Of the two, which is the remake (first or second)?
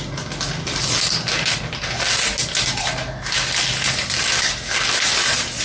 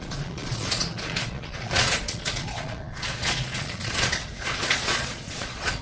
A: second